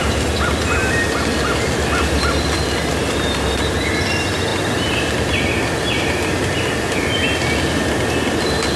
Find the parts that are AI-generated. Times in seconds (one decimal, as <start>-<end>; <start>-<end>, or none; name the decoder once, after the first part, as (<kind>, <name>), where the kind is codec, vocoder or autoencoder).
none